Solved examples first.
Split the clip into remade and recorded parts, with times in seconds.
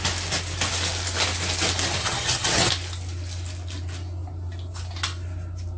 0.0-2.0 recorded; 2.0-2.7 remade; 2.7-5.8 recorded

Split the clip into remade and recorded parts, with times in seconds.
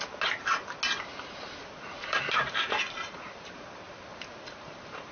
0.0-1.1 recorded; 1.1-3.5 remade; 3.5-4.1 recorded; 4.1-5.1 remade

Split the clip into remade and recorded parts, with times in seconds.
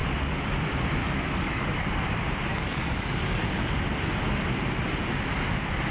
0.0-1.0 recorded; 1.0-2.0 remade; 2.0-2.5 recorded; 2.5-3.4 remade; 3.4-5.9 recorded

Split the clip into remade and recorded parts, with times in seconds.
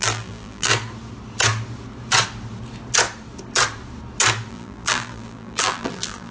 0.0-0.7 remade; 0.7-4.5 recorded; 4.5-6.3 remade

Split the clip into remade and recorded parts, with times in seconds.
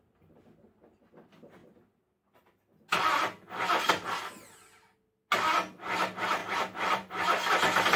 0.0-6.4 recorded; 6.4-7.1 remade; 7.1-8.0 recorded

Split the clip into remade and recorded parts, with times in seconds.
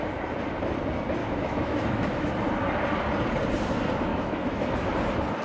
0.0-1.2 recorded; 1.2-2.3 remade; 2.3-4.1 recorded; 4.1-4.8 remade; 4.8-5.4 recorded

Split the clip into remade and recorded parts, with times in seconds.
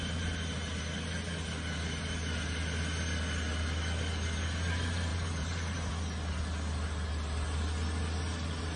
0.0-5.1 recorded; 5.1-5.9 remade; 5.9-8.8 recorded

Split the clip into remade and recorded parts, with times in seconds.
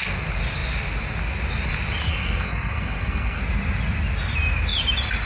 0.0-2.1 recorded; 2.1-3.4 remade; 3.4-5.3 recorded